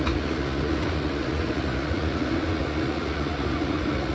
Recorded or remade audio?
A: remade